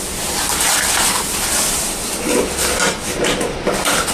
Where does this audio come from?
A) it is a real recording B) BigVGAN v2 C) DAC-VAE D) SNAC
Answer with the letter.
A